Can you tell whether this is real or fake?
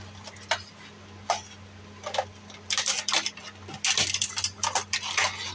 real